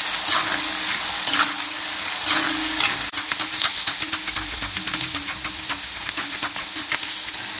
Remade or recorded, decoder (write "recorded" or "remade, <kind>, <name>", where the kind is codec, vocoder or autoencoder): recorded